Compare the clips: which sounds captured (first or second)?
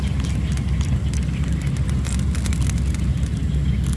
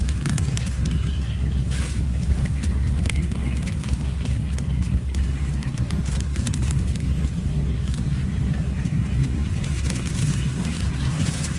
first